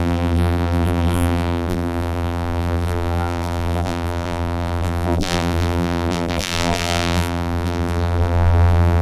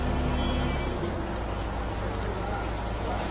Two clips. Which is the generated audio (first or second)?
first